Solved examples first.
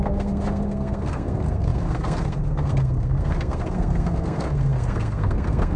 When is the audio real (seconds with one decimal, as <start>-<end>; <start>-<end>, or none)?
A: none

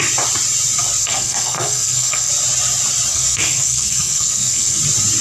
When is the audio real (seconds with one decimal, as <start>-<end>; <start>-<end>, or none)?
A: 0.0-1.0; 2.3-3.1; 4.8-5.2

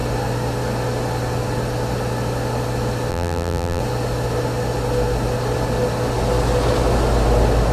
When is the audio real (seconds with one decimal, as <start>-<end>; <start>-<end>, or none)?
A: 0.0-3.1; 3.8-7.7

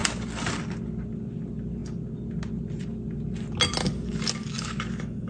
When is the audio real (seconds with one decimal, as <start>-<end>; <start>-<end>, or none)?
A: 0.0-3.8